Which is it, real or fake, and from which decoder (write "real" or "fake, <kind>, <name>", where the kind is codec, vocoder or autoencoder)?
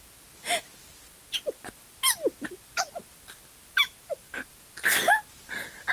real